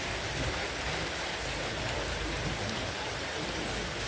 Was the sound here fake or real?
real